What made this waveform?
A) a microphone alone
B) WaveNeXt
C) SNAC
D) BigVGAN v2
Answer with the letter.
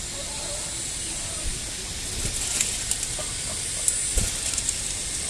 A